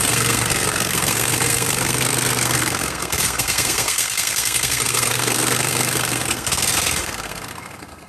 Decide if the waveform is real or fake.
fake